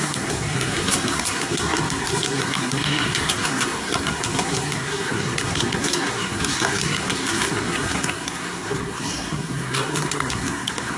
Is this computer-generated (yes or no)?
yes